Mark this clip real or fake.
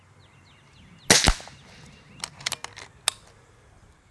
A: real